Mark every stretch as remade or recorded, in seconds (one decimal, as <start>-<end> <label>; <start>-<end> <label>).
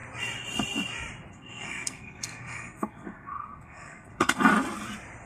0.0-1.3 recorded; 1.3-4.5 remade; 4.5-5.3 recorded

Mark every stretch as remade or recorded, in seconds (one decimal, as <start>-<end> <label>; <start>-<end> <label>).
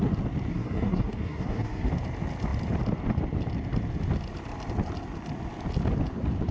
0.0-0.5 recorded; 0.5-1.9 remade; 1.9-6.5 recorded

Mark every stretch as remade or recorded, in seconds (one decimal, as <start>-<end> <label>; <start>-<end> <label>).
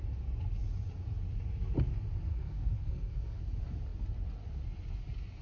0.0-2.3 recorded; 2.3-3.4 remade; 3.4-5.4 recorded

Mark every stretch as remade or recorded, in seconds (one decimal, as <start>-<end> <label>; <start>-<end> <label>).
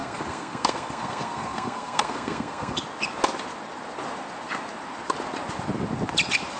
0.0-2.8 remade; 2.8-6.6 recorded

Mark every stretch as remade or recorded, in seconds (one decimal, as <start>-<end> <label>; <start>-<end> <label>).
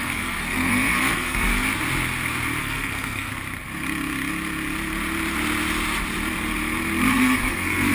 0.0-1.5 remade; 1.5-2.6 recorded; 2.6-3.3 remade; 3.3-7.1 recorded; 7.1-7.9 remade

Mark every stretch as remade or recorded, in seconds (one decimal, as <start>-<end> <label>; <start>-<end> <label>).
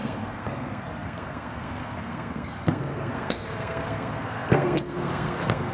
0.0-5.7 remade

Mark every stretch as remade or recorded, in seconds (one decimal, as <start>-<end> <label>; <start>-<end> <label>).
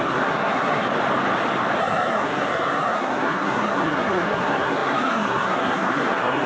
0.0-0.9 remade; 0.9-1.8 recorded; 1.8-6.5 remade